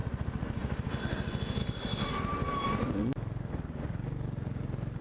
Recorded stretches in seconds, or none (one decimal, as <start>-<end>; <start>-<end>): 0.0-1.6; 2.2-5.0